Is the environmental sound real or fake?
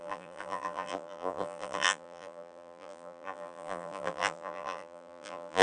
fake